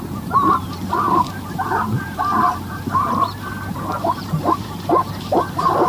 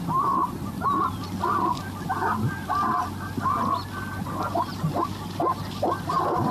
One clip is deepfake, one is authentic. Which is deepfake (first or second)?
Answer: first